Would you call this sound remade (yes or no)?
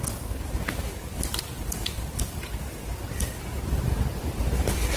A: no